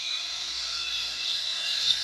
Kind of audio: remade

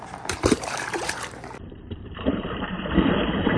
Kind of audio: remade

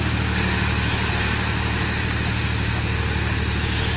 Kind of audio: recorded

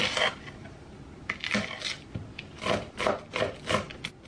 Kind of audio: recorded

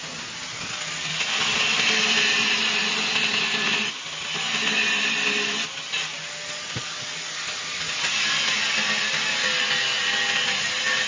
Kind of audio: recorded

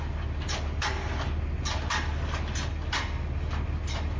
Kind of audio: recorded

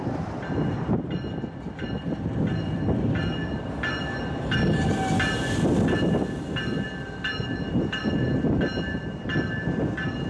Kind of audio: recorded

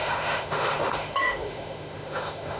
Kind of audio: remade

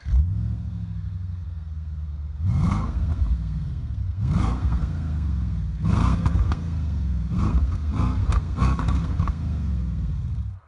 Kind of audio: remade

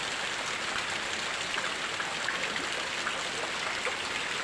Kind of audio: recorded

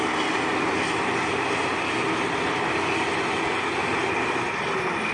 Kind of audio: recorded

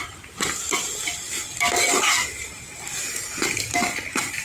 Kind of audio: recorded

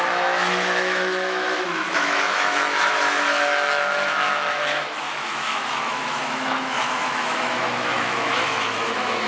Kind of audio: remade